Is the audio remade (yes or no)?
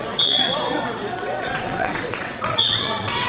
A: yes